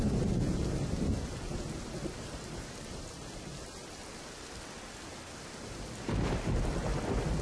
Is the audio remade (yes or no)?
no